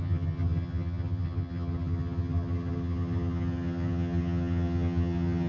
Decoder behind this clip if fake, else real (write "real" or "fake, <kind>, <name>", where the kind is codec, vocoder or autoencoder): fake, vocoder, HiFi-GAN